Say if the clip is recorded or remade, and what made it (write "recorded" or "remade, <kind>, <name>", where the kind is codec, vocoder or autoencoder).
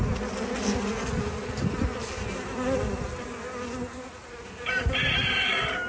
recorded